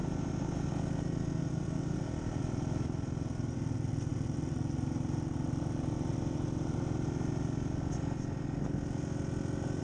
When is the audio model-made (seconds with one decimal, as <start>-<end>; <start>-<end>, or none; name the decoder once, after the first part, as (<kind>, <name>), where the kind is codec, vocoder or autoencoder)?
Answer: 0.0-0.7 (vocoder, BigVGAN v2)